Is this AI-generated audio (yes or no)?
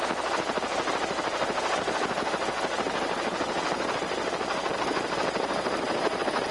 yes